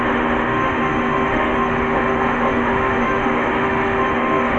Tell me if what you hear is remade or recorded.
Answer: remade